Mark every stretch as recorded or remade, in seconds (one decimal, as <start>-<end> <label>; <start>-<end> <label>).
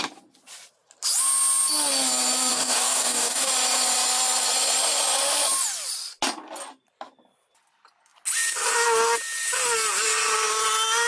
0.0-2.5 recorded; 2.5-3.5 remade; 3.5-11.1 recorded